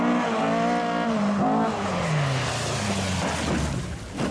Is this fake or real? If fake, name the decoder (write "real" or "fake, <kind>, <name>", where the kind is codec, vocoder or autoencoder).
real